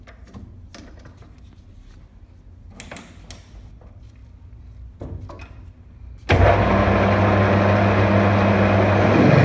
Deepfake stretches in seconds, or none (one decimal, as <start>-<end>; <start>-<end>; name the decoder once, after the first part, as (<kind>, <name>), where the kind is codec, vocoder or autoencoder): none